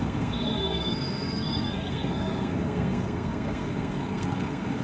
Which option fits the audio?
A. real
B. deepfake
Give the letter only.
B